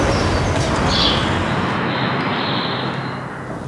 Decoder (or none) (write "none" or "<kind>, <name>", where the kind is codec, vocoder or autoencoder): none